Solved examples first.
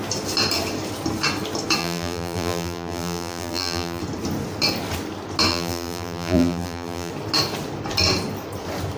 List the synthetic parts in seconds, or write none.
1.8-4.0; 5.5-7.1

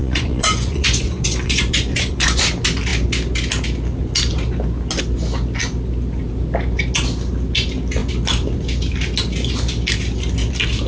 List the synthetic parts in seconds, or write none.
0.0-2.4

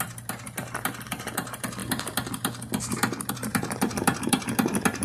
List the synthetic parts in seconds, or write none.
0.0-1.8; 3.3-5.0

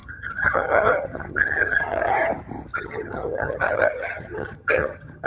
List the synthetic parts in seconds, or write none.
0.0-2.1; 2.7-5.3

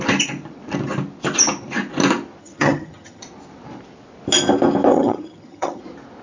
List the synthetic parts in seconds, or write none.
2.4-3.2; 4.9-5.8

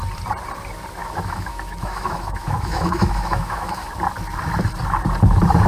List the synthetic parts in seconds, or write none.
1.0-3.9

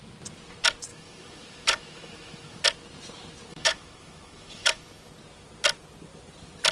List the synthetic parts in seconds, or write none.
0.9-2.6; 3.5-5.1

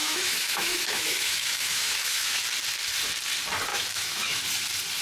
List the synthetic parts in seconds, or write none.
0.0-2.4; 3.7-4.4